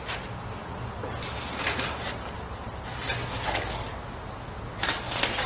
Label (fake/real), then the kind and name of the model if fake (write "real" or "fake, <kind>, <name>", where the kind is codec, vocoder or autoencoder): real